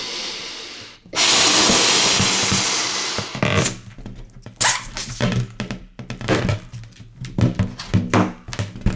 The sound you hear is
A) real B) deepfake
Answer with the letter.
A